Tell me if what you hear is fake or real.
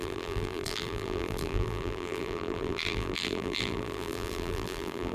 fake